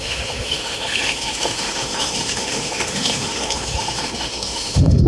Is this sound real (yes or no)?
no